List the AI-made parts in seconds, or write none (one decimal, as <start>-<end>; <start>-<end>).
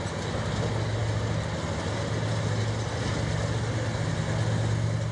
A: none